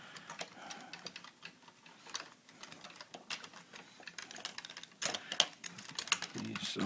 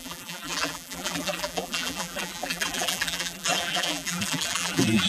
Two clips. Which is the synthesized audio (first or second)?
second